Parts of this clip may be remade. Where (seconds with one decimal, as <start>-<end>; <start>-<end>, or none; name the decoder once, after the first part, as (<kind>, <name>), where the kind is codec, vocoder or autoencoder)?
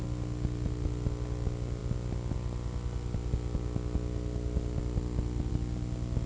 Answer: none